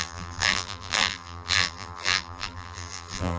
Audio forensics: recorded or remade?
remade